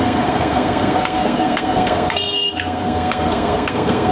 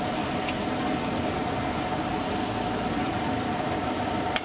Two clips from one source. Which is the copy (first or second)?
first